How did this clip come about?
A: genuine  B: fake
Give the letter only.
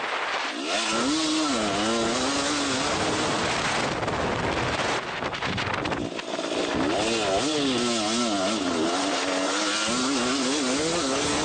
A